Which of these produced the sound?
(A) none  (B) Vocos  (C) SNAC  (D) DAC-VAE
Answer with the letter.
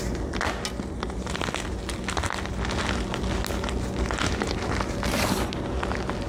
A